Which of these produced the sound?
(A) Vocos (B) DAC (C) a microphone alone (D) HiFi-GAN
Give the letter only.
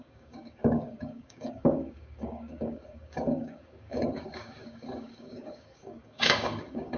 B